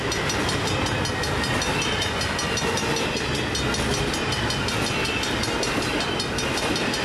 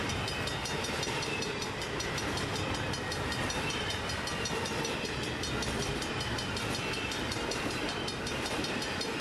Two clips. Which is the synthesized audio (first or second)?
second